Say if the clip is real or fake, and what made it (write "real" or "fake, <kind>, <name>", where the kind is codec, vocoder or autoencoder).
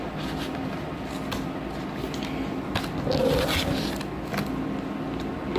real